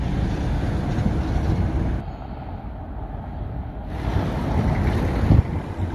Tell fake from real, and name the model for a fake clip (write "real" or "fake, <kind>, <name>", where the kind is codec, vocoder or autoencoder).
real